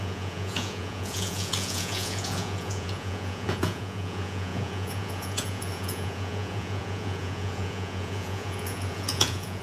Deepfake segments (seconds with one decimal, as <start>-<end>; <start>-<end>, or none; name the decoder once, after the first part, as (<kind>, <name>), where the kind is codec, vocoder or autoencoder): 0.0-9.6 (vocoder, Vocos)